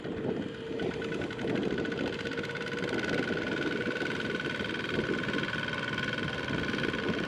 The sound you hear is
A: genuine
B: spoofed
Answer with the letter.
A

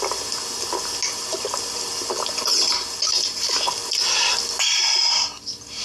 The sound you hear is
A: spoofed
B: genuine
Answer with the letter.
B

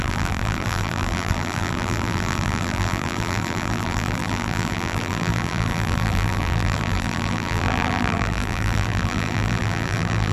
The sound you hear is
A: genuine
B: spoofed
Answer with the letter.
B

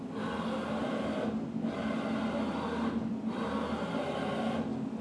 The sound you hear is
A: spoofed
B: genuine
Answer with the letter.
B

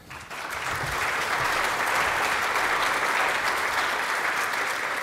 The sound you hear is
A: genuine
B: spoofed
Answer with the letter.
A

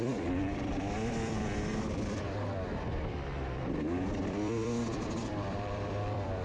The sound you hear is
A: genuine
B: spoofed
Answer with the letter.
B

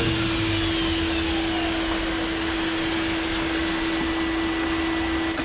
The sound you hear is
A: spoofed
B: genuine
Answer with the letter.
B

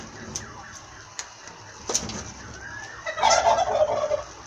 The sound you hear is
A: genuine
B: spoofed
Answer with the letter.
A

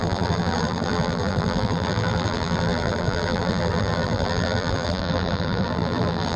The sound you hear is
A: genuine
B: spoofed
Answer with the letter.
B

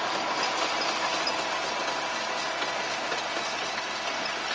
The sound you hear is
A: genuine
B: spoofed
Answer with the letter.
A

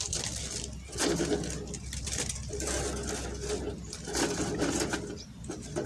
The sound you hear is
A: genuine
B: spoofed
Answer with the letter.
B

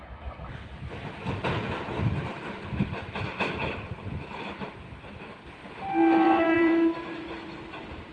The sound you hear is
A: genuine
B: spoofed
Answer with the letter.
B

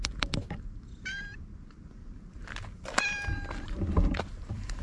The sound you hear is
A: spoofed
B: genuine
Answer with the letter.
A